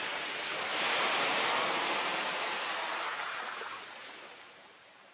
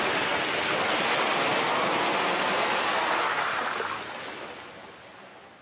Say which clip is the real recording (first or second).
second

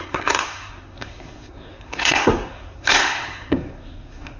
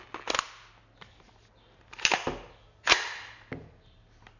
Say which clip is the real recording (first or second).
second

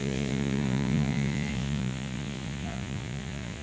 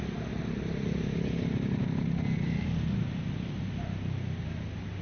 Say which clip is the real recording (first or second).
second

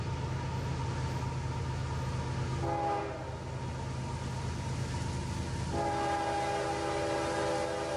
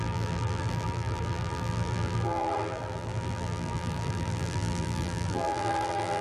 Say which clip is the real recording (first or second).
first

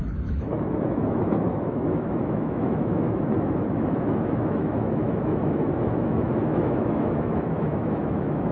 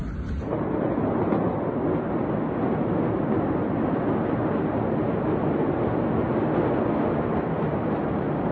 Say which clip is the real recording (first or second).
second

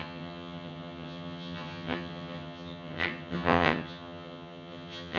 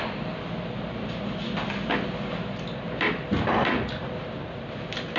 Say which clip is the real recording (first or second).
second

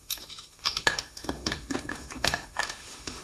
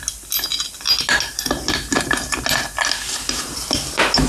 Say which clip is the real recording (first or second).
second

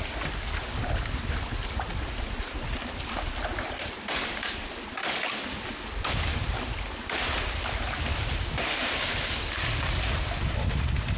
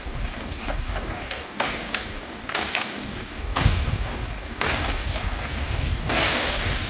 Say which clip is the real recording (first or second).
first